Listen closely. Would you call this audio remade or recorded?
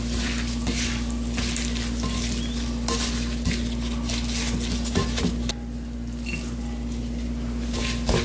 recorded